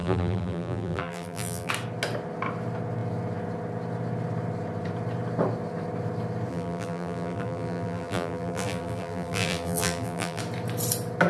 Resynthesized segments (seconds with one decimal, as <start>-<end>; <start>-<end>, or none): 0.0-1.7; 6.5-10.4